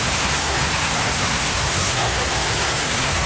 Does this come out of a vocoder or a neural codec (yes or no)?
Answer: yes